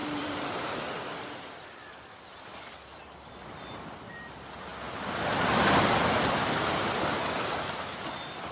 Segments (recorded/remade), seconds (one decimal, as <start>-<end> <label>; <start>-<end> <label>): 0.0-3.5 remade; 3.5-8.5 recorded